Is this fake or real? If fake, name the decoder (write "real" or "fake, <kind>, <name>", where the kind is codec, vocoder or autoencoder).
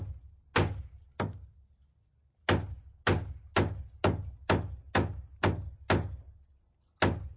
real